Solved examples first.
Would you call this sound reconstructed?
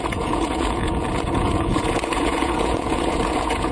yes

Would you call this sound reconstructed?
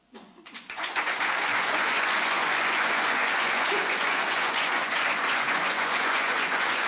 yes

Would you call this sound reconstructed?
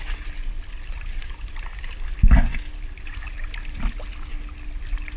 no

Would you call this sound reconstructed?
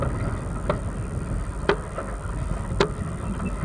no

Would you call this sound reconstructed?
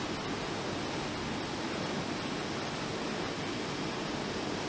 no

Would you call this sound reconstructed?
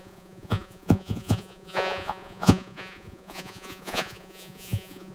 yes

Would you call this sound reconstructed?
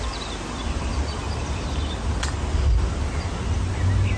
no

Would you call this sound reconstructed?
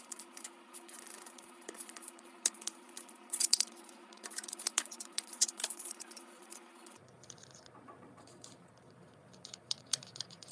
yes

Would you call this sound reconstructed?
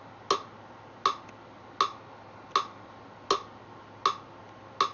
no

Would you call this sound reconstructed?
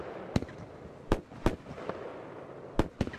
no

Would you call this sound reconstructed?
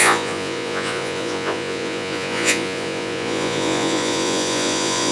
yes